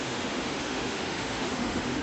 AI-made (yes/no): yes